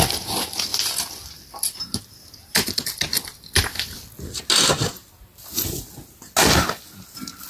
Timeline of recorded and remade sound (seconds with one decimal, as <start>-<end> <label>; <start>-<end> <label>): 0.0-7.5 recorded